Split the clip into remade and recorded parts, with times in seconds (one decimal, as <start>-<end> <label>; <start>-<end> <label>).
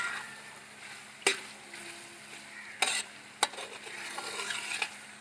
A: 0.0-5.2 recorded